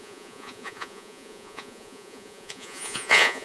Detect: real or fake fake